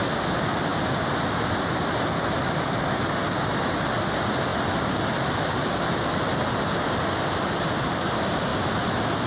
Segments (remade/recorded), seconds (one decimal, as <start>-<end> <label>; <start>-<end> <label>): 0.0-9.3 recorded